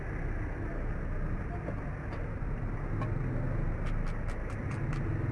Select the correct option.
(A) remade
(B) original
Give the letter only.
B